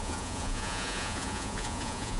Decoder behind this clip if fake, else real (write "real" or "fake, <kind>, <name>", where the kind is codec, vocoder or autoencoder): fake, vocoder, Vocos